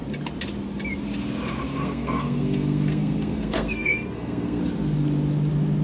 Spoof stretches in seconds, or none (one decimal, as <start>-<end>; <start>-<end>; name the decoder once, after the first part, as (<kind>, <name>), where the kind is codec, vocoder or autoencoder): 1.7-4.6 (codec, SNAC)